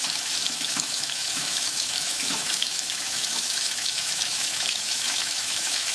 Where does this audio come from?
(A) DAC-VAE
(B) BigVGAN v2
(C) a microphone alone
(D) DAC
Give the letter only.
A